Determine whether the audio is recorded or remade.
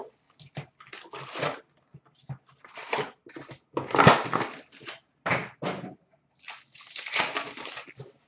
recorded